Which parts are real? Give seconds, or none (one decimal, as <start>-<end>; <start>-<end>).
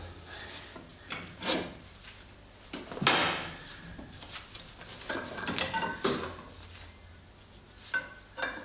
0.0-0.9; 5.3-8.6